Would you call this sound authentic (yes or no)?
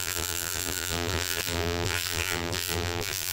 no